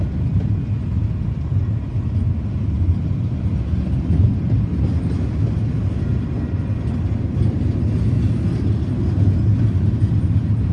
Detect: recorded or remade recorded